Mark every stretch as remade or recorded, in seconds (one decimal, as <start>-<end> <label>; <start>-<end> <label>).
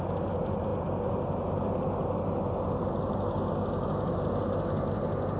0.0-5.4 recorded